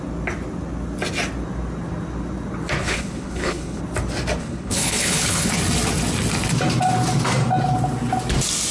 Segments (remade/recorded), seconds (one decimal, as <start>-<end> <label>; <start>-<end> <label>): 0.0-2.8 recorded; 2.8-3.8 remade; 3.8-4.4 recorded; 4.4-5.5 remade; 5.5-8.7 recorded